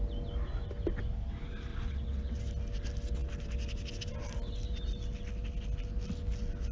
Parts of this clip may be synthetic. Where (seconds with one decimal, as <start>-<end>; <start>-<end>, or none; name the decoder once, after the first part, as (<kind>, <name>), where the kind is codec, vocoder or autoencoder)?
1.7-2.4 (vocoder, WaveNeXt)